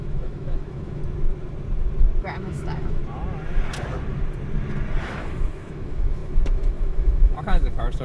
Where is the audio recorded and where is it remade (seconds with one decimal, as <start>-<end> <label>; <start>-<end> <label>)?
0.0-1.0 remade; 1.0-2.2 recorded; 2.2-3.0 remade; 3.0-5.0 recorded; 5.0-8.0 remade